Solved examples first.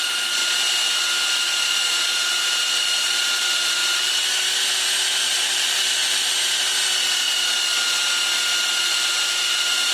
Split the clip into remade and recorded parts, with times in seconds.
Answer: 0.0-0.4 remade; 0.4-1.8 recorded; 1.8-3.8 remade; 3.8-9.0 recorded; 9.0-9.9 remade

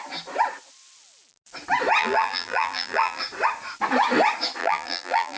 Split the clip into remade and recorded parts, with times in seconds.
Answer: 0.0-2.0 recorded; 2.0-3.2 remade; 3.2-4.6 recorded; 4.6-5.4 remade